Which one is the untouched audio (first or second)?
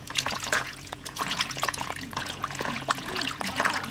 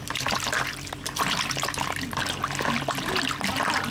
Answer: second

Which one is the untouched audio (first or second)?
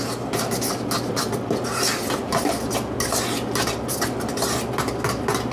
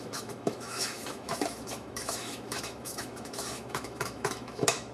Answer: first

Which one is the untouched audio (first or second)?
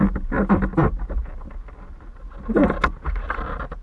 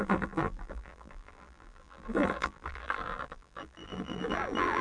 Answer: first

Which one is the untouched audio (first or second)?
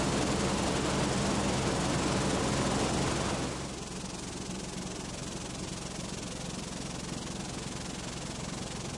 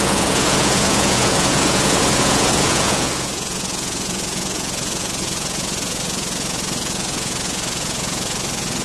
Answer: first